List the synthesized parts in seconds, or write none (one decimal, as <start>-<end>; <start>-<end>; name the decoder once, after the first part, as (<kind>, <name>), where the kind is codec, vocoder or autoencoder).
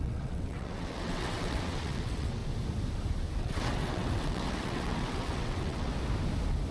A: 0.0-2.4 (vocoder, WaveNeXt); 3.4-5.9